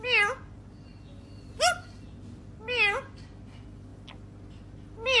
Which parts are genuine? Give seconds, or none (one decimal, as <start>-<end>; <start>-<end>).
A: 0.0-5.2